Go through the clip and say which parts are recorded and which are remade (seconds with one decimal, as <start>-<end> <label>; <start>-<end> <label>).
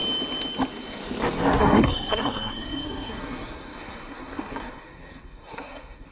0.0-1.6 recorded; 1.6-6.1 remade